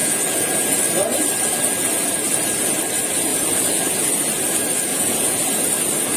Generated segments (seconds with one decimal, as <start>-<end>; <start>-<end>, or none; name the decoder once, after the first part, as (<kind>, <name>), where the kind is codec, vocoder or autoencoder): 0.0-0.8 (vocoder, Vocos); 3.3-4.1; 4.9-5.6